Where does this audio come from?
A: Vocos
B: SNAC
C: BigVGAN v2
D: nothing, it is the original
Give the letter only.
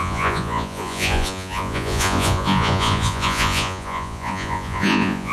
A